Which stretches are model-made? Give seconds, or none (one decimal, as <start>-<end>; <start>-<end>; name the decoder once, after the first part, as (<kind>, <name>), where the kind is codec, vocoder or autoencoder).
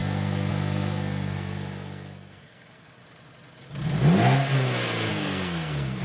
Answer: 0.0-3.0 (codec, SNAC); 5.1-6.0